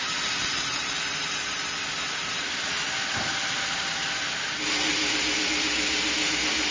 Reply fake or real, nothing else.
real